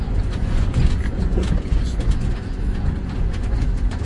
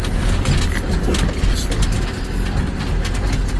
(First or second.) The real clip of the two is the second